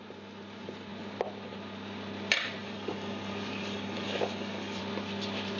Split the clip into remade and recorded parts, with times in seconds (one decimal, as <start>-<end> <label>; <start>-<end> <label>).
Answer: 0.0-2.6 recorded; 2.6-4.8 remade; 4.8-5.6 recorded